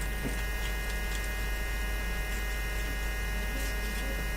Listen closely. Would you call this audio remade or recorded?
recorded